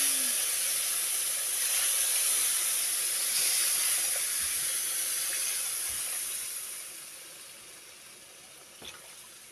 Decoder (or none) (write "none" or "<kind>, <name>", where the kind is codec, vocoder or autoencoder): none